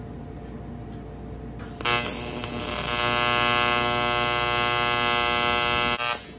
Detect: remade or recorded recorded